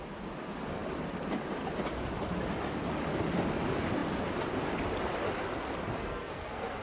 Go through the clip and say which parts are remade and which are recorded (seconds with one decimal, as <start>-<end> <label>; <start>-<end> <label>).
0.0-6.0 recorded; 6.0-6.8 remade